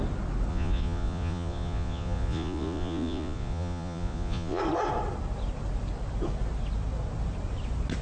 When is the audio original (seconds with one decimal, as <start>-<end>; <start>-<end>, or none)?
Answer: 0.0-0.5; 4.6-8.0